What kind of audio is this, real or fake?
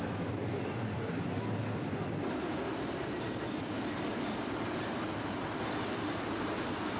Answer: real